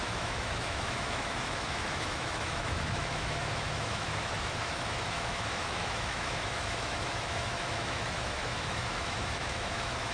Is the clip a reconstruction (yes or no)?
yes